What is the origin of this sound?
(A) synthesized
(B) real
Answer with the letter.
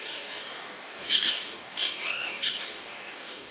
A